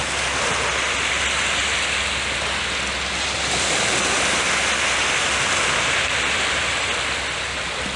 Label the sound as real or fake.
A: real